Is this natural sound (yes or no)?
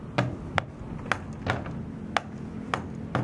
yes